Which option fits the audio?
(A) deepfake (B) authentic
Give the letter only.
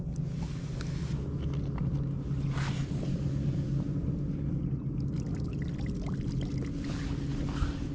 B